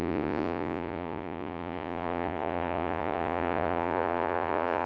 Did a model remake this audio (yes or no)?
yes